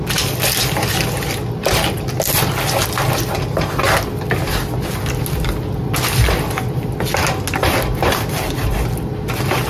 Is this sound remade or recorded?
recorded